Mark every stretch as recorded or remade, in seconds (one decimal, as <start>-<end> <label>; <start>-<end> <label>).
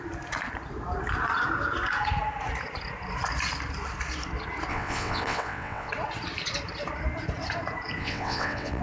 0.0-4.7 recorded; 4.7-5.9 remade; 5.9-8.0 recorded; 8.0-8.8 remade